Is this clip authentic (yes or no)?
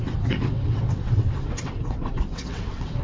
no